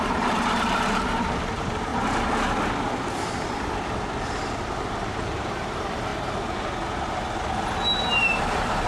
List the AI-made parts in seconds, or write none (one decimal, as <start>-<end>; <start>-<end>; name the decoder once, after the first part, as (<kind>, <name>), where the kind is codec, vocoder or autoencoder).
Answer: 0.0-1.9 (vocoder, BigVGAN v2); 4.9-6.1; 8.4-8.9